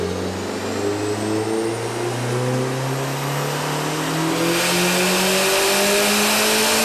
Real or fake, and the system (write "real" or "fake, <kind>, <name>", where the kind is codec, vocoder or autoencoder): real